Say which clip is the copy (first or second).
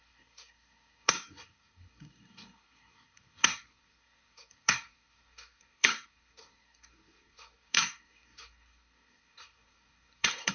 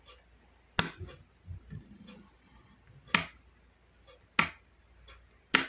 first